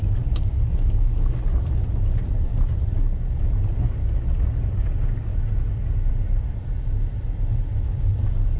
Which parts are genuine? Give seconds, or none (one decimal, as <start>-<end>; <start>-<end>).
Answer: 0.0-8.6